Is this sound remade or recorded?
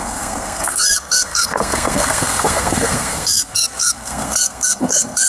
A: remade